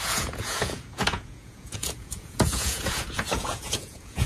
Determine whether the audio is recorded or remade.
remade